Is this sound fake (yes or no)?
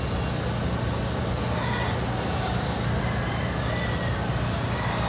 no